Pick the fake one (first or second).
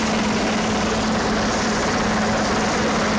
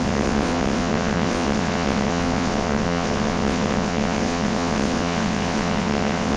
second